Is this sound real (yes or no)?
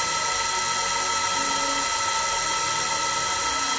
yes